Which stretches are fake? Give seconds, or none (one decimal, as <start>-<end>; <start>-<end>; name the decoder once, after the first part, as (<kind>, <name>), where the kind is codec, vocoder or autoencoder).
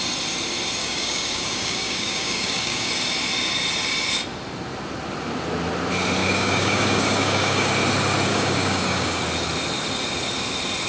0.8-2.9 (codec, DAC); 6.2-7.7; 8.3-9.2